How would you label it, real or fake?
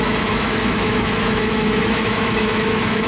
fake